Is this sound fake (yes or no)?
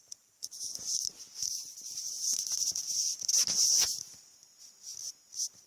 no